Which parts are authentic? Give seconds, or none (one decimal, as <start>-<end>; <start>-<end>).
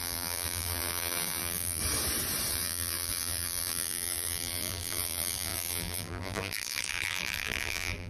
1.8-2.5